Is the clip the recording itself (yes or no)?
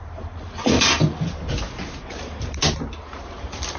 yes